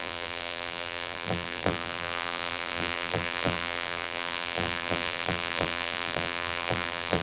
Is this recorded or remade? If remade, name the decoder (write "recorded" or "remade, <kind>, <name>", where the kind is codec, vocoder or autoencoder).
remade, vocoder, BigVGAN v2